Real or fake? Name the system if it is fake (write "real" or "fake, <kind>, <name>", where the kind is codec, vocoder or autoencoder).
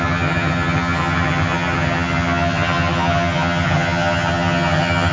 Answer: fake, vocoder, HiFi-GAN